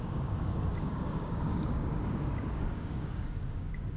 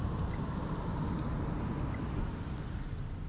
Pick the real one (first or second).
second